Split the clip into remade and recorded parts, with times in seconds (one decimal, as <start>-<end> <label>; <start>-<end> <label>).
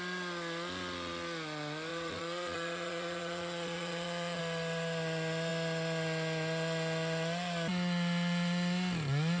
0.0-1.9 recorded; 1.9-4.4 remade; 4.4-9.4 recorded